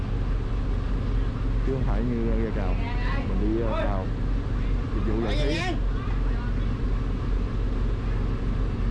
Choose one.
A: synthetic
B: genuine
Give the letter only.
B